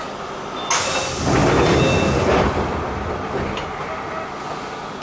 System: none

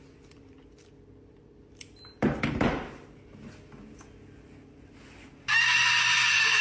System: vocoder, BigVGAN v2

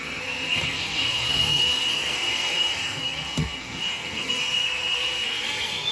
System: codec, SNAC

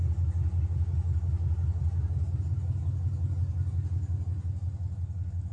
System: none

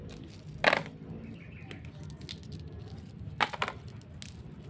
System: none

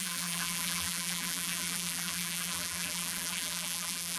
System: vocoder, BigVGAN v2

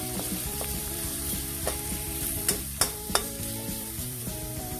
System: vocoder, BigVGAN v2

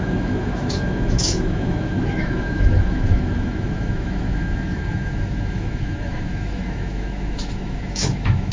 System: autoencoder, DAC-VAE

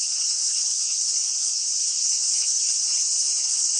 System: codec, HILCodec